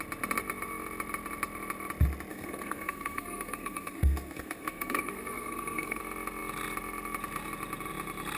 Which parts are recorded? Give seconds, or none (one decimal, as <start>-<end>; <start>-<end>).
0.0-2.3; 6.0-8.4